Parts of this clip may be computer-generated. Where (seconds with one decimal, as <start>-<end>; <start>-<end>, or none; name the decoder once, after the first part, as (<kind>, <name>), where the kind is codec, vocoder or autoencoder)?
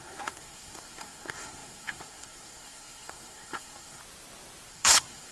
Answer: 0.0-4.0 (codec, SNAC); 4.7-5.3